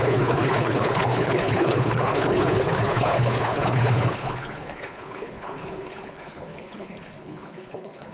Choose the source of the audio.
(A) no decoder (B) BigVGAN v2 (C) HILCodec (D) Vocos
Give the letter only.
C